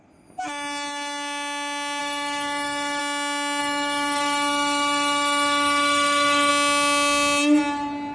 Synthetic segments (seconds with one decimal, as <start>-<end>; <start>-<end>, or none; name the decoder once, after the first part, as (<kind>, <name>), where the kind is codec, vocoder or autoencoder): 2.0-3.0 (codec, DAC); 3.6-6.5

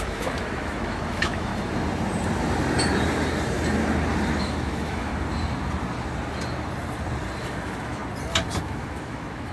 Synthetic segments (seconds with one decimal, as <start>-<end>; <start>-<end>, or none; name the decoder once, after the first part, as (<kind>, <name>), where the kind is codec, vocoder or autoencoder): 0.0-1.5 (autoencoder, DAC-VAE); 4.4-5.1; 7.4-8.0; 8.6-9.5

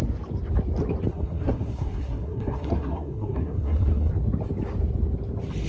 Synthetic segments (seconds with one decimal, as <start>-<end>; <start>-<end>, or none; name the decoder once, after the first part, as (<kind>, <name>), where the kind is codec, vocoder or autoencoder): 1.1-4.1 (codec, SNAC)